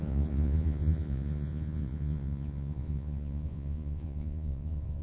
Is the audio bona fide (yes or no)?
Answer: no